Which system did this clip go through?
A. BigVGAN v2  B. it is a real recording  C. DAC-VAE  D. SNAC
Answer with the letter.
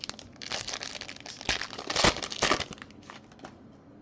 B